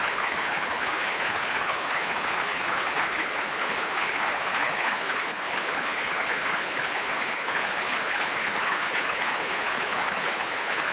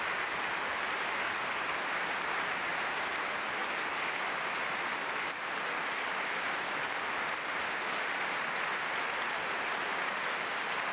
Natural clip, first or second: second